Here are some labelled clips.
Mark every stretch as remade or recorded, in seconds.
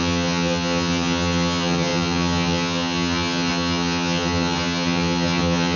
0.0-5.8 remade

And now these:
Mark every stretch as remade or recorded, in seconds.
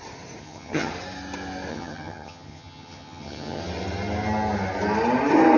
0.0-0.4 recorded; 0.4-0.9 remade; 0.9-1.7 recorded; 1.7-3.6 remade; 3.6-5.6 recorded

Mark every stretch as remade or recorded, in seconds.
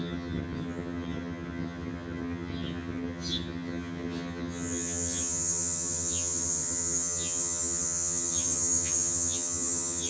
0.0-10.1 remade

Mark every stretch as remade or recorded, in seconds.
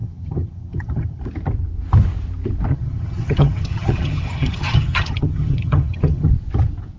0.0-1.2 remade; 1.2-2.7 recorded; 2.7-6.3 remade; 6.3-7.0 recorded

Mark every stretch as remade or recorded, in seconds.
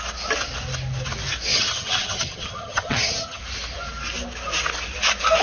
0.0-1.5 recorded; 1.5-3.4 remade; 3.4-5.4 recorded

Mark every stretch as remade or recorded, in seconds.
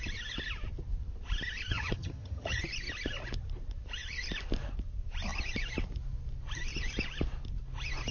0.0-1.7 recorded; 1.7-2.6 remade; 2.6-8.1 recorded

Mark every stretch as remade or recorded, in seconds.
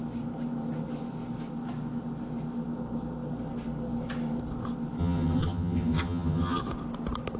0.0-5.0 recorded; 5.0-6.6 remade; 6.6-7.4 recorded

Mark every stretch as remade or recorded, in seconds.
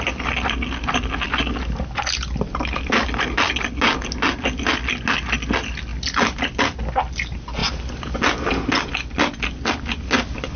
0.0-10.6 recorded